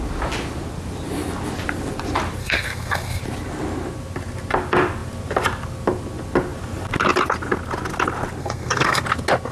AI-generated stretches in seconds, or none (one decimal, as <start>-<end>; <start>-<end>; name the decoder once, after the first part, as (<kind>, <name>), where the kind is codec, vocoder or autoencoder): 2.4-3.2 (codec, SNAC); 8.4-9.0